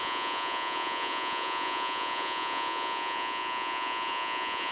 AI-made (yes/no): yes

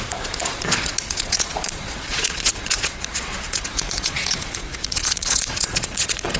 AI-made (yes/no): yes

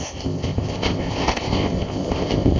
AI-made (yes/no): yes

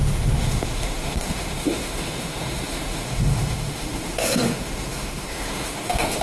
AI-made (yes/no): yes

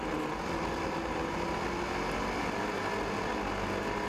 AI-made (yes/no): no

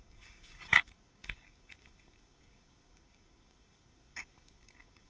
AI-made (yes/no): yes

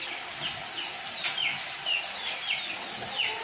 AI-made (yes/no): no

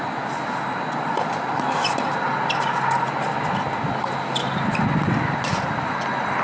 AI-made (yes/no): no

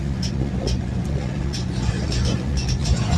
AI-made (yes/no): yes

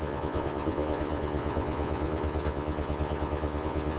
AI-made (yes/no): yes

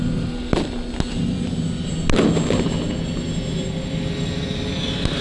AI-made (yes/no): no